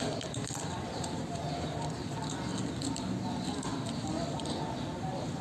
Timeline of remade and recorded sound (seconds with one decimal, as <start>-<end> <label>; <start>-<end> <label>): 0.0-5.4 recorded